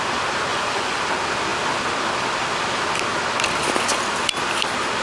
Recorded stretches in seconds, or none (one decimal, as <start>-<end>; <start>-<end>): 0.0-0.5; 1.0-5.0